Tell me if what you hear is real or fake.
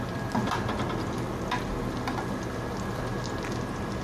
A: real